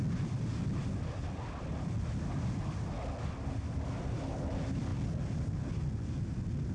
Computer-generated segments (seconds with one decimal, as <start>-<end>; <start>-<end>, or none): none